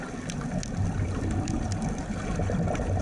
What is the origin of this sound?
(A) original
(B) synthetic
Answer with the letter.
A